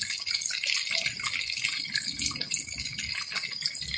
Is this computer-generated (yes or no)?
no